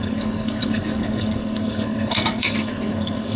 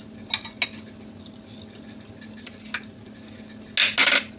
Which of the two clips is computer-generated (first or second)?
first